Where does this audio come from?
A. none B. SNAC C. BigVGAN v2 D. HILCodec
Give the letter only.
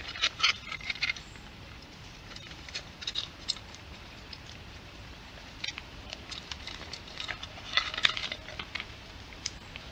C